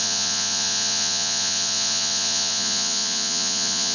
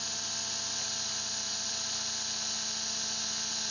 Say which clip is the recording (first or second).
second